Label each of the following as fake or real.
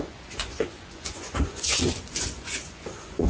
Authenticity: fake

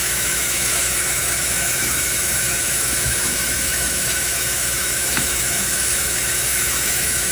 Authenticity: fake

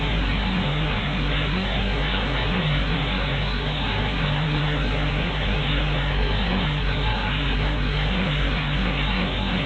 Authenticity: fake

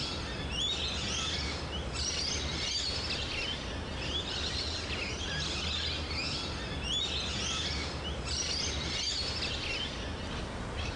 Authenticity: real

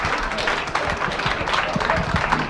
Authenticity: real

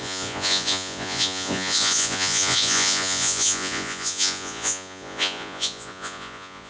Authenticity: fake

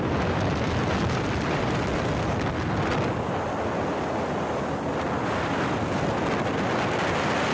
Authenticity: real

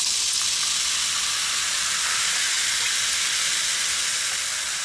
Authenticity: real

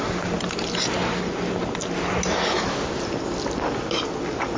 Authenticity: real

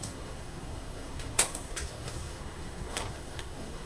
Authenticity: fake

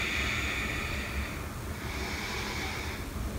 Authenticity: real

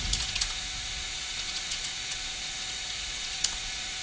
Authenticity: fake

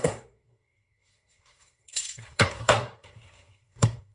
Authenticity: fake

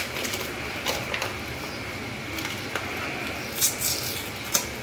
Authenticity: real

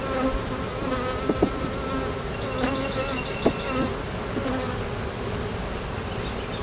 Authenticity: real